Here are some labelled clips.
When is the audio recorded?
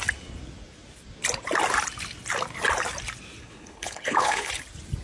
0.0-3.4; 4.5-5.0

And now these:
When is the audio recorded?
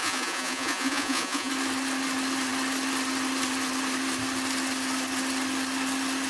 1.5-6.3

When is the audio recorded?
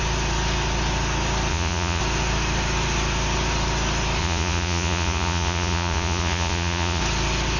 0.0-1.5; 2.0-4.2; 7.0-7.6